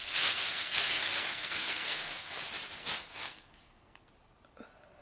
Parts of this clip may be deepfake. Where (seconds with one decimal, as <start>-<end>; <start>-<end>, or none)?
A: 0.0-2.4; 2.8-4.1